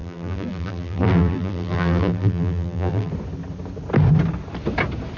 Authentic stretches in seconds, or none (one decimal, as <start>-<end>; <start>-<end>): 3.1-5.2